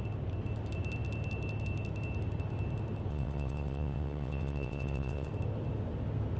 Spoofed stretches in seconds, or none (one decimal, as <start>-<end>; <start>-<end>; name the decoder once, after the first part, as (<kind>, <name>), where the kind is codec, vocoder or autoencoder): 3.1-5.3 (vocoder, WaveNeXt)